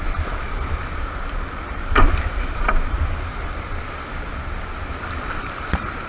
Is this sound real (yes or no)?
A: yes